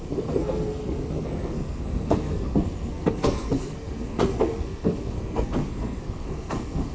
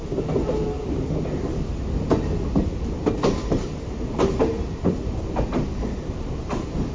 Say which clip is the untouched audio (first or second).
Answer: second